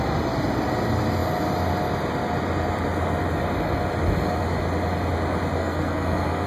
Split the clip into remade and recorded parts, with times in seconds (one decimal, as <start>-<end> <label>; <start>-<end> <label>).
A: 0.0-5.6 recorded; 5.6-6.5 remade